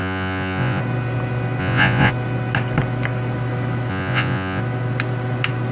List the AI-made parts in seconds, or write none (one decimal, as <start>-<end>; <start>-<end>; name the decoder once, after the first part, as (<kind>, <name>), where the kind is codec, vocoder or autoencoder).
0.0-0.8 (vocoder, Vocos); 1.6-2.1; 3.9-4.6